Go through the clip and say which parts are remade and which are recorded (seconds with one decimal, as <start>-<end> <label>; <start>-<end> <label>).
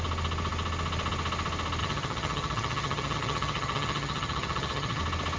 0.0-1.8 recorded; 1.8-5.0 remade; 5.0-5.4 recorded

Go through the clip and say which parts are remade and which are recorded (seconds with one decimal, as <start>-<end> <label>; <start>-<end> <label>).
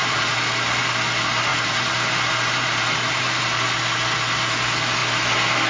0.0-0.8 remade; 0.8-1.5 recorded; 1.5-3.4 remade; 3.4-5.7 recorded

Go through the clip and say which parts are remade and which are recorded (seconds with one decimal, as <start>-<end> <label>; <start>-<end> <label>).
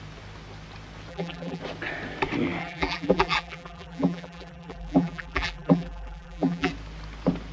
0.0-1.1 recorded; 1.1-1.6 remade; 1.6-2.6 recorded; 2.6-6.7 remade; 6.7-7.5 recorded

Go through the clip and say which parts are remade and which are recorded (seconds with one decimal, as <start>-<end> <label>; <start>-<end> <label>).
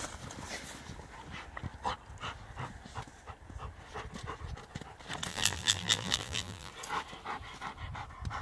0.0-5.3 recorded; 5.3-6.7 remade; 6.7-8.4 recorded